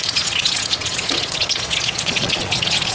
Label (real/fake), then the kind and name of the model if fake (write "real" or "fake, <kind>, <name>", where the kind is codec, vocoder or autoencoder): fake, vocoder, Vocos